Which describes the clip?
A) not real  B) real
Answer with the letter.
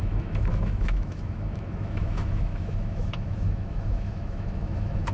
A